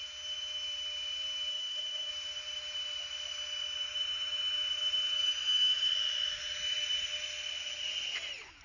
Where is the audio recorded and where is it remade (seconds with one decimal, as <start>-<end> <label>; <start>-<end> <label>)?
0.0-1.5 recorded; 1.5-2.1 remade; 2.1-8.6 recorded